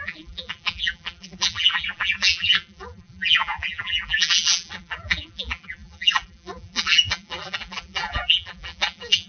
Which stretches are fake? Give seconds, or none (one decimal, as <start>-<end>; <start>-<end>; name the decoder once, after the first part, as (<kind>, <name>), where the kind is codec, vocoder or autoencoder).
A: 0.0-9.3 (vocoder, BigVGAN v2)